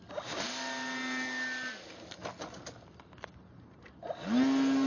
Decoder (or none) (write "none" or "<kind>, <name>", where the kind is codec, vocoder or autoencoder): none